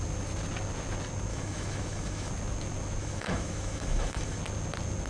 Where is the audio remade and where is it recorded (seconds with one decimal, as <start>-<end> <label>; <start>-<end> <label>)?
0.0-1.3 recorded; 1.3-2.3 remade; 2.3-3.0 recorded; 3.0-4.4 remade; 4.4-5.1 recorded